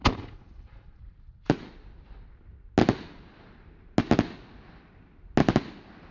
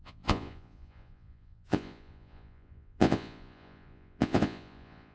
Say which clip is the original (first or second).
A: first